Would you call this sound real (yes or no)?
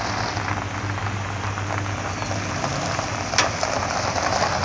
yes